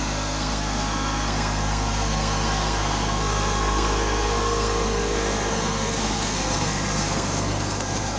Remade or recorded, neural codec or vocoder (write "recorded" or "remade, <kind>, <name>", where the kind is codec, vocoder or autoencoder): remade, codec, SNAC